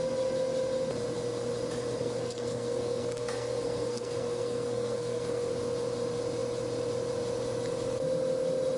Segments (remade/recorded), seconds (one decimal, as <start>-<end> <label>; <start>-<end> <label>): 0.0-2.0 recorded; 2.0-5.5 remade; 5.5-8.8 recorded